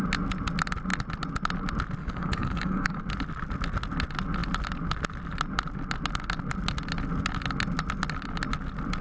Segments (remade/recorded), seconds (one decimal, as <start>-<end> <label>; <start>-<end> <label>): 0.0-2.0 recorded; 2.0-3.0 remade; 3.0-9.0 recorded